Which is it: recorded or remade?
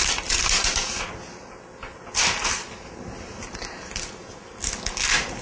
recorded